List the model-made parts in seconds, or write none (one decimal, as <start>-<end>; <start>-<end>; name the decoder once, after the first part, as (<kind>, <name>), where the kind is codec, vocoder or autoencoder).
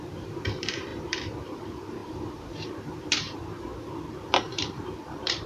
0.0-3.7 (vocoder, BigVGAN v2)